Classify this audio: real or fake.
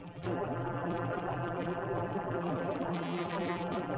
fake